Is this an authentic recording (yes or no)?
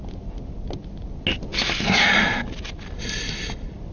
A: yes